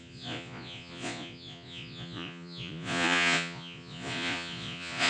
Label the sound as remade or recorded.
remade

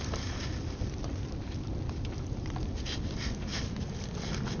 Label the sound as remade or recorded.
recorded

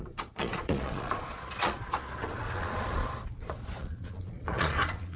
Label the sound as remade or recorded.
remade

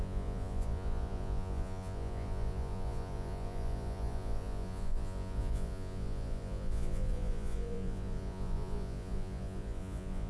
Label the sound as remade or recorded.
remade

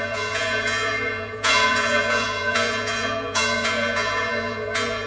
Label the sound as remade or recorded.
remade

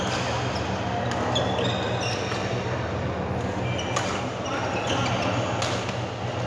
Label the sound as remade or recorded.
recorded